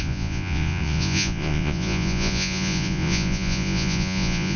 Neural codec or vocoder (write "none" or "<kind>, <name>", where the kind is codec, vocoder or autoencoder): vocoder, Vocos